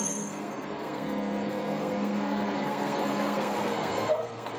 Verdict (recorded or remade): remade